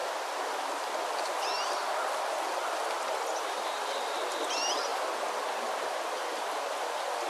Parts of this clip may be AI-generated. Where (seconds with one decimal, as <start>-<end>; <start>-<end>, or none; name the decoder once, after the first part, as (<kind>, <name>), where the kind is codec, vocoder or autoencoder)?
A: none

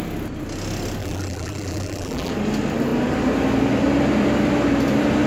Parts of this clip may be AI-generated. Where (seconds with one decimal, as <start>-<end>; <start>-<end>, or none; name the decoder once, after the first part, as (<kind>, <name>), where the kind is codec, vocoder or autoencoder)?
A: 1.0-2.3 (vocoder, BigVGAN v2)

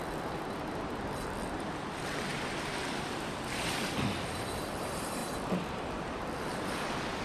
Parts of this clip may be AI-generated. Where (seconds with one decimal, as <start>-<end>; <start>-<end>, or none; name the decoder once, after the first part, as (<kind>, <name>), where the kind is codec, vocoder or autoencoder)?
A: 0.0-2.3 (vocoder, BigVGAN v2); 3.0-7.2

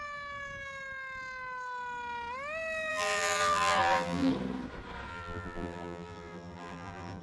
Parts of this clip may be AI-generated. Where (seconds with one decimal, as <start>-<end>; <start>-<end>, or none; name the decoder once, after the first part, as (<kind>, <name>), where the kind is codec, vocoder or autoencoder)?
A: 2.9-4.3 (vocoder, BigVGAN v2); 5.1-7.2

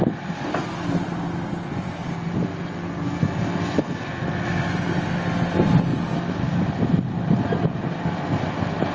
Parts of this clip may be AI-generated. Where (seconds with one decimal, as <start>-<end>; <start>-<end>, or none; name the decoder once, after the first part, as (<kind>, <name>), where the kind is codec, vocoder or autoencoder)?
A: none